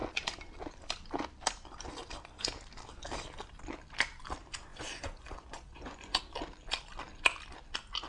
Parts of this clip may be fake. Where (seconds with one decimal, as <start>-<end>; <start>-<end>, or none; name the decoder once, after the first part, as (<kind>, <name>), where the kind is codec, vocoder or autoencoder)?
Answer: 4.7-6.2 (vocoder, Vocos)